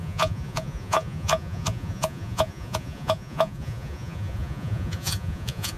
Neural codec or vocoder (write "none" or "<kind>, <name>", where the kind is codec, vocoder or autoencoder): vocoder, Vocos